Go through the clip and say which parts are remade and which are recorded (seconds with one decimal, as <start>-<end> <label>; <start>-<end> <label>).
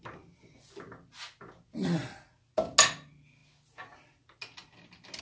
0.0-5.2 recorded